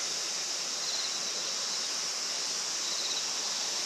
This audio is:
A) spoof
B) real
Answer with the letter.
B